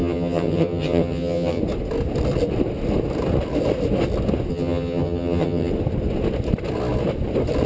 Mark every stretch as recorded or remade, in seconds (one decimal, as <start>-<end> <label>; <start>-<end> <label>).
0.0-1.6 remade; 1.6-4.5 recorded; 4.5-5.7 remade; 5.7-7.7 recorded